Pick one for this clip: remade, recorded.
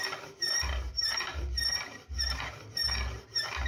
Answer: recorded